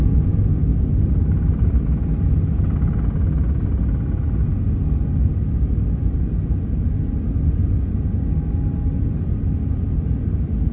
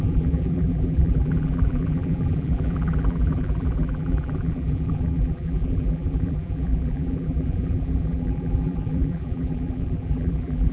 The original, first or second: first